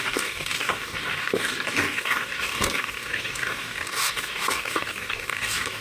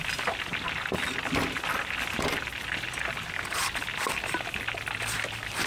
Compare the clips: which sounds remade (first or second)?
first